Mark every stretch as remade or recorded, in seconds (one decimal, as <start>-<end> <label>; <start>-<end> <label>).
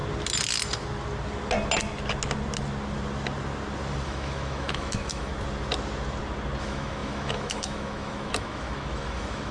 0.0-4.0 recorded; 4.0-5.3 remade; 5.3-6.6 recorded; 6.6-9.5 remade